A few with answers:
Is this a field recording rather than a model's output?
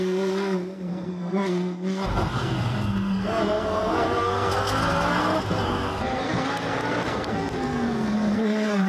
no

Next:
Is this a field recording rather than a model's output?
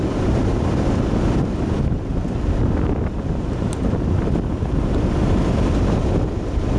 yes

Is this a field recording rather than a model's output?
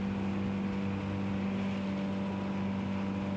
yes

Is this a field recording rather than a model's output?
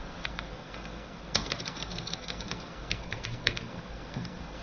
no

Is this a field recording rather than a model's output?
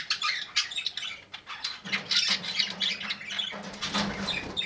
yes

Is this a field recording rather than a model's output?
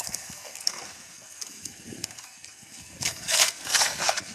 no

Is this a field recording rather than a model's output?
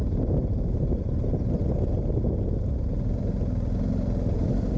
yes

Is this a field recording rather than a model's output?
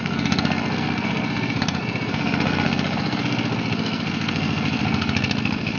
no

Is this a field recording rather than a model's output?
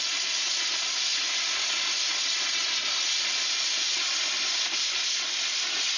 yes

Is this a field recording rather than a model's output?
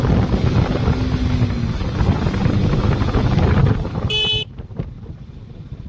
yes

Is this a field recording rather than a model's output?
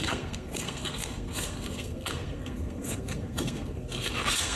no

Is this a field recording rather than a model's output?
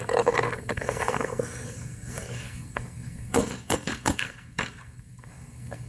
no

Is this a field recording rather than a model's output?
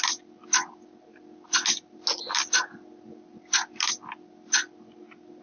yes